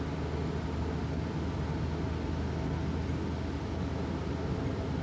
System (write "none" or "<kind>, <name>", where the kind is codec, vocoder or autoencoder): none